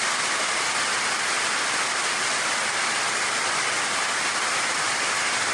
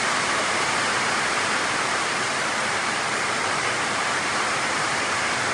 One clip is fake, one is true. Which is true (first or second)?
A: first